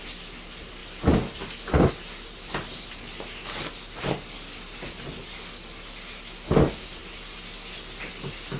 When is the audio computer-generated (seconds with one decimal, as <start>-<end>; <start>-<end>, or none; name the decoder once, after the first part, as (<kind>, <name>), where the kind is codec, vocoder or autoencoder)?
none